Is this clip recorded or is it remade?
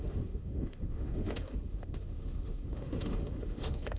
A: remade